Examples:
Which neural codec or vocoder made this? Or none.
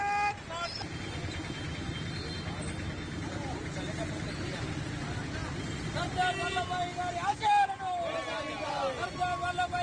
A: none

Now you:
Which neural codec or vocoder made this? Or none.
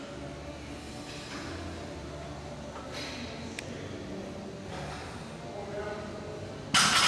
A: none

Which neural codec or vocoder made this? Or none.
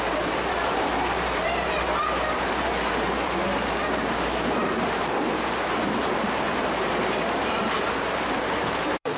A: vocoder, BigVGAN v2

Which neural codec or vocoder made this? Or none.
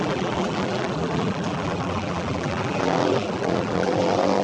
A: vocoder, BigVGAN v2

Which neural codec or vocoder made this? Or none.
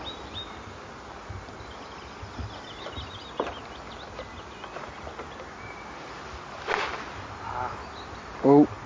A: none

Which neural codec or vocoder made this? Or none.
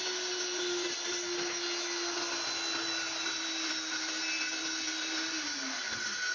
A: none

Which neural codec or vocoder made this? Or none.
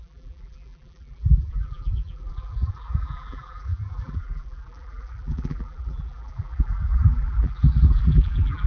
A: vocoder, BigVGAN v2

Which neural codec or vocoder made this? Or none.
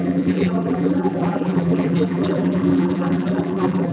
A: vocoder, BigVGAN v2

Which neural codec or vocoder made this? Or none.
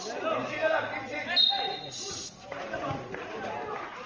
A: none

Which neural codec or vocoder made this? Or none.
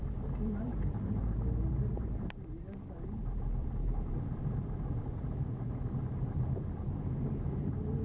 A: vocoder, BigVGAN v2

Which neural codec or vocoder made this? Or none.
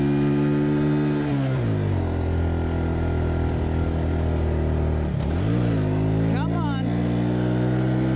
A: none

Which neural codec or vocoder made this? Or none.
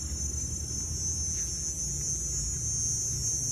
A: none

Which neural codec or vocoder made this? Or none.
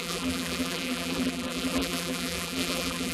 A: vocoder, BigVGAN v2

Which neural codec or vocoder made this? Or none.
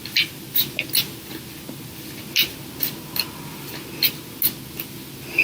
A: none